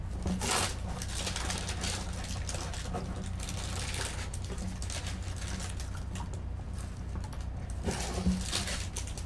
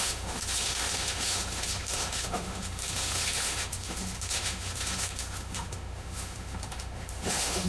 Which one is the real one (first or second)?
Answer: first